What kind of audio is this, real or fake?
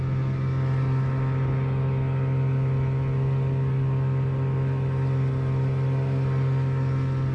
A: real